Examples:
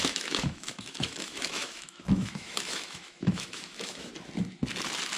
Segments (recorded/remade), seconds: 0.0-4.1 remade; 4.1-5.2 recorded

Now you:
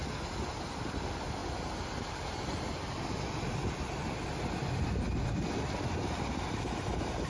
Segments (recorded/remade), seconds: 0.0-7.3 recorded

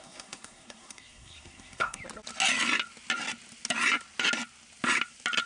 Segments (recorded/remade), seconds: 0.0-2.0 remade; 2.0-5.5 recorded

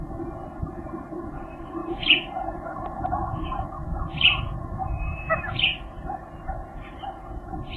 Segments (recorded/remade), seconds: 0.0-7.8 recorded